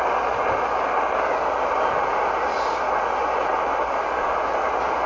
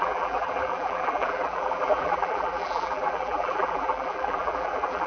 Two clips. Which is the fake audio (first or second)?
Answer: second